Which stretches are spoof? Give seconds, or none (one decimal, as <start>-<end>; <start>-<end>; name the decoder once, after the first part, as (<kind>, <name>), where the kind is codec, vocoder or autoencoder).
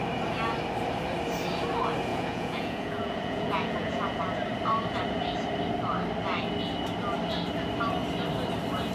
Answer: 2.1-4.2 (vocoder, Vocos)